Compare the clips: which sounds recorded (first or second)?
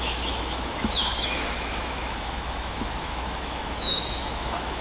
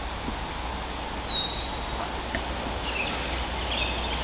second